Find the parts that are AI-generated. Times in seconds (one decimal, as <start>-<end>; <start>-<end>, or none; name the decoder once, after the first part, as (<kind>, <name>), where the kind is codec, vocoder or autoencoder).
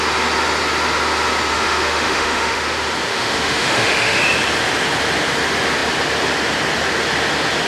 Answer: 1.5-2.6 (autoencoder, DAC-VAE); 3.1-4.2